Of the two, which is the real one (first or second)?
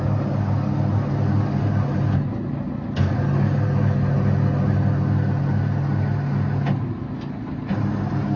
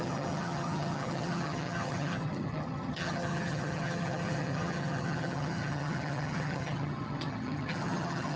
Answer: first